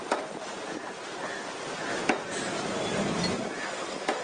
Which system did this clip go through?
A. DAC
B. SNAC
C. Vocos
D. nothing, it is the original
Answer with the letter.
D